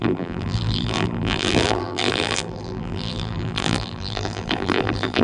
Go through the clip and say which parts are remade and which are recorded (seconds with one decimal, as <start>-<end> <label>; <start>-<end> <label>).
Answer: 0.0-5.2 remade